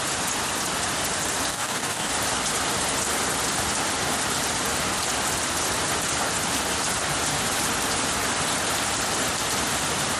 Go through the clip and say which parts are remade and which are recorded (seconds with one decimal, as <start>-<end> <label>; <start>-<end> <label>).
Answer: 0.0-1.5 recorded; 1.5-2.1 remade; 2.1-10.2 recorded

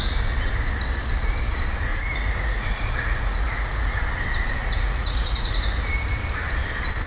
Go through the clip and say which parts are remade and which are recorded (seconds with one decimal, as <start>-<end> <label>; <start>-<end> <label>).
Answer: 0.0-1.9 recorded; 1.9-4.0 remade; 4.0-4.6 recorded; 4.6-5.6 remade; 5.6-7.1 recorded

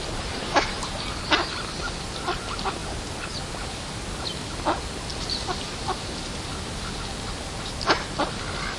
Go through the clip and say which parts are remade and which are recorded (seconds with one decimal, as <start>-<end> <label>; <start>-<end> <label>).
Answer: 0.0-8.8 recorded

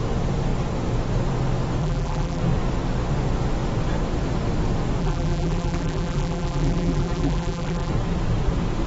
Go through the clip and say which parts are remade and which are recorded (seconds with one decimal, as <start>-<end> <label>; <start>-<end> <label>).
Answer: 0.0-1.8 recorded; 1.8-2.4 remade; 2.4-5.0 recorded; 5.0-7.9 remade; 7.9-8.9 recorded

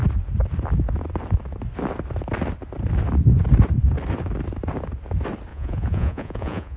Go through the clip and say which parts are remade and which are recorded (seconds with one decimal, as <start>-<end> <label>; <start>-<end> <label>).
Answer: 0.0-5.5 recorded; 5.5-6.8 remade

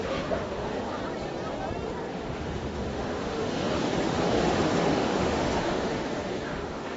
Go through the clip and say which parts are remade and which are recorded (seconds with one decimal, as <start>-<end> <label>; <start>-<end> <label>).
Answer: 0.0-1.0 remade; 1.0-2.1 recorded; 2.1-7.0 remade

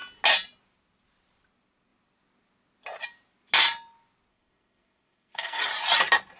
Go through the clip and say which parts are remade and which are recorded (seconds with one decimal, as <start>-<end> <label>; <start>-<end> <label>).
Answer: 0.0-4.3 recorded; 4.3-5.6 remade; 5.6-6.4 recorded